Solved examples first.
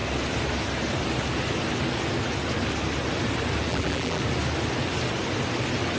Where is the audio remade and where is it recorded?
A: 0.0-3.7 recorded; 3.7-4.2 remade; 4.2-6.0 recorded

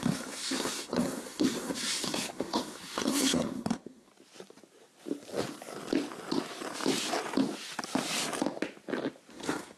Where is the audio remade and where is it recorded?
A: 0.0-4.1 remade; 4.1-9.3 recorded; 9.3-9.8 remade

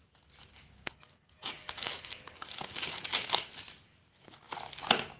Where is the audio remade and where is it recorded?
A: 0.0-0.5 recorded; 0.5-3.6 remade; 3.6-5.2 recorded

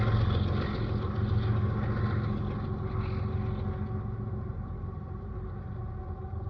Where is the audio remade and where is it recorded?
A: 0.0-4.5 recorded; 4.5-6.5 remade